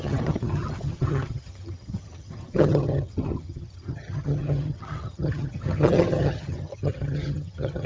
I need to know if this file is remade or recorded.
remade